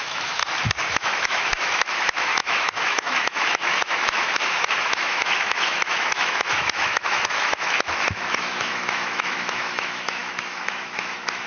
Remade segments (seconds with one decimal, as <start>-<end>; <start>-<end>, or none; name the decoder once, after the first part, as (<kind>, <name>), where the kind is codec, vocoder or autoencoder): 0.0-0.4 (autoencoder, DAC-VAE); 0.9-11.5